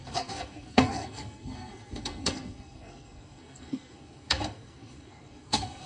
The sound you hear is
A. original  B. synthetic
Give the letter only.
B